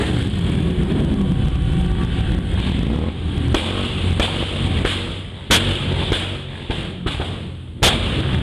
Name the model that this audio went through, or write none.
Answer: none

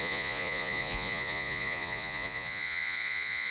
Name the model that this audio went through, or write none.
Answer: vocoder, Vocos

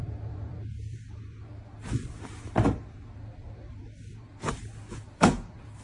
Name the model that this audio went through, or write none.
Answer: vocoder, BigVGAN v2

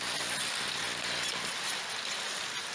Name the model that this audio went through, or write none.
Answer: none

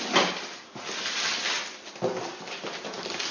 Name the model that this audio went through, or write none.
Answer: none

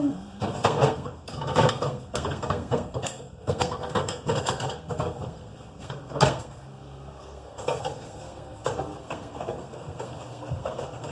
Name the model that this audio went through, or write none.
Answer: codec, SNAC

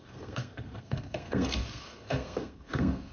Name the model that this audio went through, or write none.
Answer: codec, SNAC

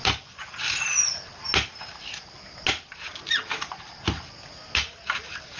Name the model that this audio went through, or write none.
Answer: none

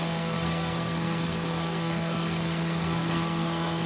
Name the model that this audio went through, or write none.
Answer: codec, SNAC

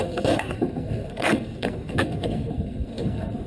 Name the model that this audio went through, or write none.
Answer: codec, SNAC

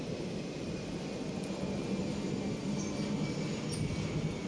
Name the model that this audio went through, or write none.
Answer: none